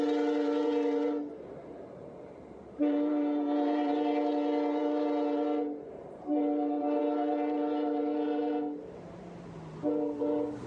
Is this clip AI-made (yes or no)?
yes